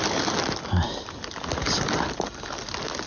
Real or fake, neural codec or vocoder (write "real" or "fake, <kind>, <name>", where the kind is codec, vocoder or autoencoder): real